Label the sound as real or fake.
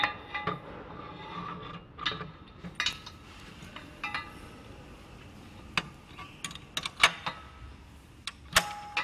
real